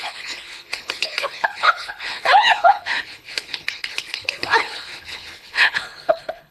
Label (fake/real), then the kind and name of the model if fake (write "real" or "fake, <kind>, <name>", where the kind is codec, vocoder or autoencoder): fake, codec, HILCodec